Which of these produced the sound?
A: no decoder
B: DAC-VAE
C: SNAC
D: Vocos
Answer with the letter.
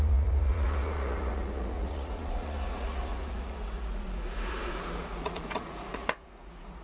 D